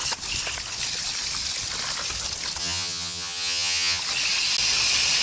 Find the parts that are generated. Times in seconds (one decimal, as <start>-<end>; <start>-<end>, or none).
2.6-4.0